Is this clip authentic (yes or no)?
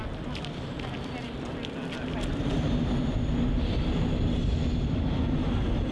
yes